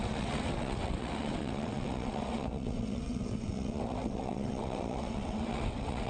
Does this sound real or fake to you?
fake